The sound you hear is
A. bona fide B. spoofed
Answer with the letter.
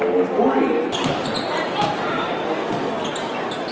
A